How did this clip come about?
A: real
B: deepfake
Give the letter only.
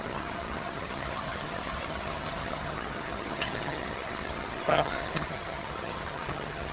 B